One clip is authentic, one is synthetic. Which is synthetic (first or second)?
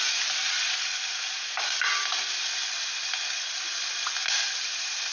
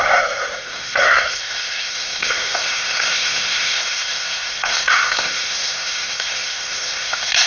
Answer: second